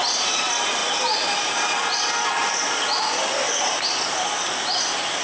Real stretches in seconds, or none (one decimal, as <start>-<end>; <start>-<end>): 0.0-5.2